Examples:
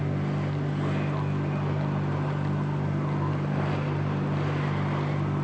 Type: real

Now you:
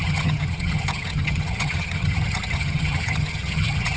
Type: fake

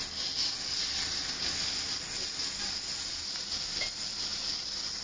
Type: real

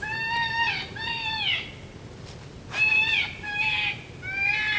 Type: real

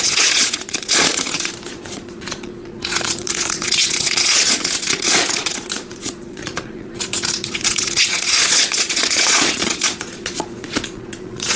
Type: fake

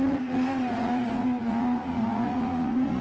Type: fake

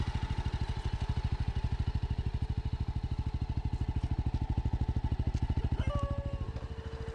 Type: real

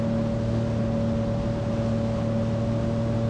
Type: real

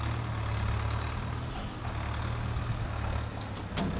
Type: real